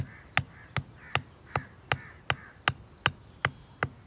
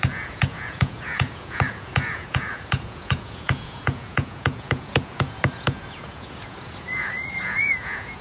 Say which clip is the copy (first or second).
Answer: second